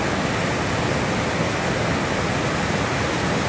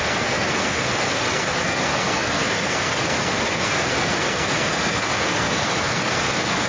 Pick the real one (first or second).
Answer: first